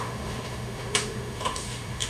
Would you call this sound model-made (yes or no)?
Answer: yes